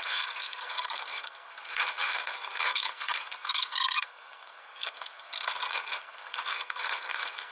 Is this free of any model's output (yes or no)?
no